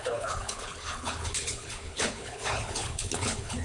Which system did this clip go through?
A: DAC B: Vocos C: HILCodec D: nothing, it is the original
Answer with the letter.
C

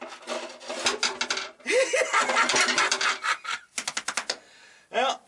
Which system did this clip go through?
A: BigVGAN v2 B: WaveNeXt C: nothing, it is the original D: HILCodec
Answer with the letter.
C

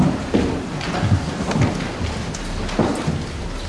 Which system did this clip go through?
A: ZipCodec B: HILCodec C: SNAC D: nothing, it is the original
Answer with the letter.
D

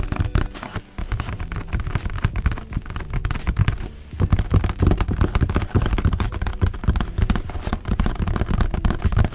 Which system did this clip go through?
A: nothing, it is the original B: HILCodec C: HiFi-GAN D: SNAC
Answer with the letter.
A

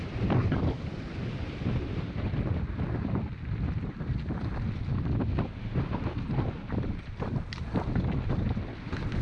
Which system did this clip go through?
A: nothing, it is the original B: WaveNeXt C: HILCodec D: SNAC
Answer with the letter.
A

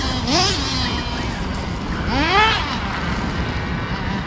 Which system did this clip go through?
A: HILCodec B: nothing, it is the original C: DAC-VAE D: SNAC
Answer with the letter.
B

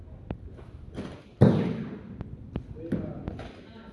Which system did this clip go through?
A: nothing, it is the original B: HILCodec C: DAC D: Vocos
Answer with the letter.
A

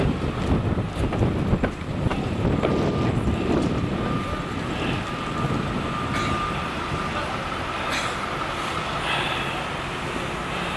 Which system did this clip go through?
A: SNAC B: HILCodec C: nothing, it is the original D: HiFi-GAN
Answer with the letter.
C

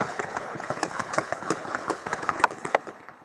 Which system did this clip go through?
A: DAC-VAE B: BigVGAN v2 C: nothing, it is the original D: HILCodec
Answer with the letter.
D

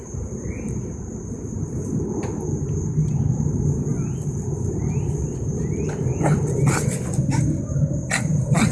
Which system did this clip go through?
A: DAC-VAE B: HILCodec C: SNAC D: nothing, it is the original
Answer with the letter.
D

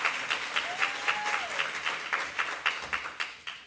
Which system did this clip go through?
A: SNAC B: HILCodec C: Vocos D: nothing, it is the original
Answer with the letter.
D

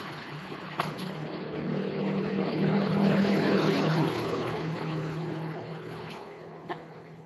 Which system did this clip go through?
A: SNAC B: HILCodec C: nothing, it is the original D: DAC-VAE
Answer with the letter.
B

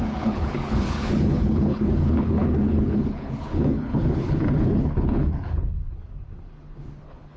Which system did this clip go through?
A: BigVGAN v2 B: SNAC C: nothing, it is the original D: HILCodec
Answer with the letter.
D